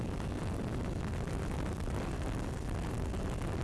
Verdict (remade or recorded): recorded